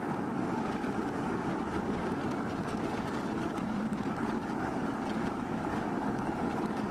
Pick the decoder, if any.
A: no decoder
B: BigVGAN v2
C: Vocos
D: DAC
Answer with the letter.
D